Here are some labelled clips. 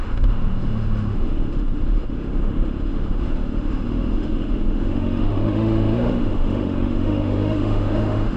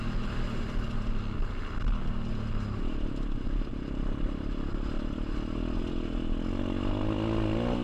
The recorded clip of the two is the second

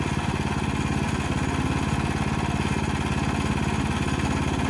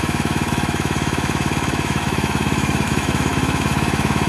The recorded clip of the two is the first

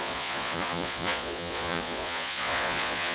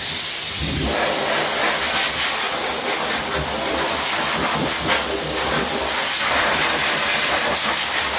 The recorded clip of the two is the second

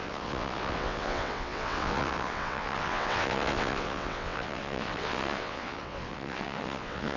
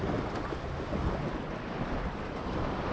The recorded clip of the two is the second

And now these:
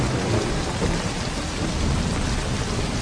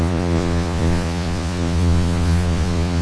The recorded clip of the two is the first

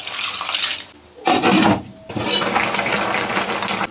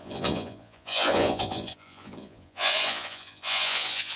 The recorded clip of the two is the first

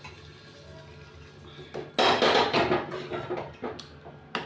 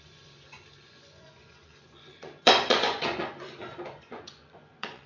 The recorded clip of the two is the first